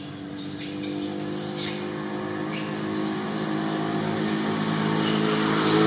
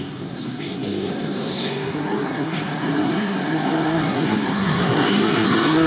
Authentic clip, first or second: first